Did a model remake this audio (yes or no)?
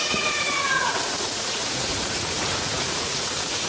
yes